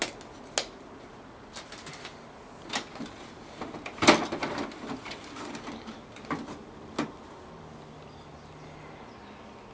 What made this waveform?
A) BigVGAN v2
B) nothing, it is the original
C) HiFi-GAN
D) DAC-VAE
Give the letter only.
B